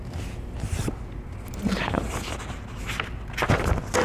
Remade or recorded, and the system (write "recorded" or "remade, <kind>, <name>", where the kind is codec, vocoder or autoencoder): recorded